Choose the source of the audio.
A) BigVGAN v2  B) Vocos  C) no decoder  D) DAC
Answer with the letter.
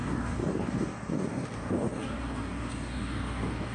D